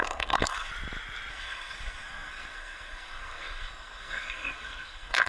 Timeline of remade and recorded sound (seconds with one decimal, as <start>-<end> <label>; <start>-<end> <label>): 0.0-0.7 remade; 0.7-1.3 recorded; 1.3-5.3 remade